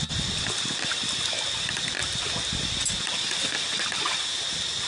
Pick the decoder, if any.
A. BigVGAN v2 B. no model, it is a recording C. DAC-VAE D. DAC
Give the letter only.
B